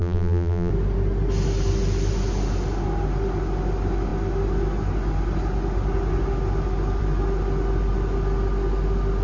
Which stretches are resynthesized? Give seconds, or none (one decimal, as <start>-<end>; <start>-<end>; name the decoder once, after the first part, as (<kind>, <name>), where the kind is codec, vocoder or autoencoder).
0.0-0.7 (vocoder, BigVGAN v2)